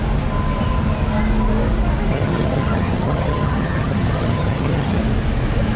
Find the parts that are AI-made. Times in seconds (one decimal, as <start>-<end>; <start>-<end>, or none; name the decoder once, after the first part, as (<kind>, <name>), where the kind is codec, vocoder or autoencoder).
2.1-5.0 (vocoder, HiFi-GAN)